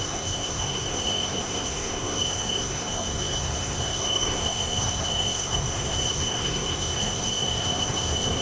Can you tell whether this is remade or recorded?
remade